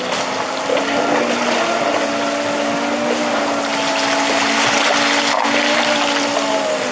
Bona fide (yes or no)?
yes